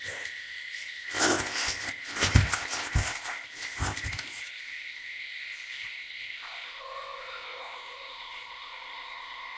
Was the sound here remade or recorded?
remade